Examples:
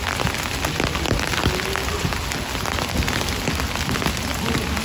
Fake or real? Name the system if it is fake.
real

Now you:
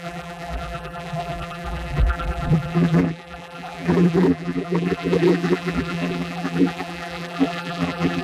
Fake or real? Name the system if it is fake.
fake, vocoder, BigVGAN v2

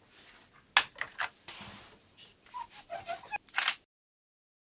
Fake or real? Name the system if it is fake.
real